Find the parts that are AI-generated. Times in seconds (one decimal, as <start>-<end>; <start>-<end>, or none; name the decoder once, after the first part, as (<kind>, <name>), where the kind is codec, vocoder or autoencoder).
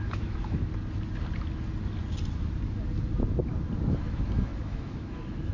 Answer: 0.0-0.7 (autoencoder, DAC-VAE); 4.0-5.5